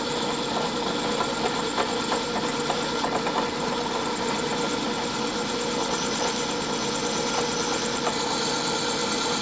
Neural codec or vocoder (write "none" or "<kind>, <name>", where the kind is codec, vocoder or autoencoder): none